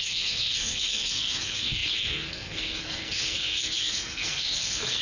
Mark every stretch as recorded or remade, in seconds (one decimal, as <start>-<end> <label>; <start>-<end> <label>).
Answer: 0.0-5.0 remade

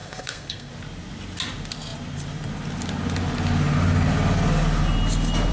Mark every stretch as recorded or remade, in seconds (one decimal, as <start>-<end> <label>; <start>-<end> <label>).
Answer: 0.0-0.7 remade; 0.7-5.5 recorded